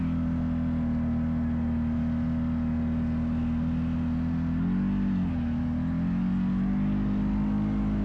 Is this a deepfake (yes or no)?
no